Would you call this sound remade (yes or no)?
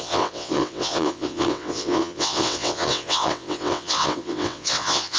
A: yes